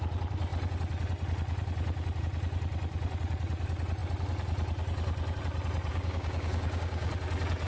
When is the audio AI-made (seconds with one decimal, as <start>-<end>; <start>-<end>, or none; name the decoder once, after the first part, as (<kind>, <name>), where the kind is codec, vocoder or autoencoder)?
5.9-7.1 (codec, DAC)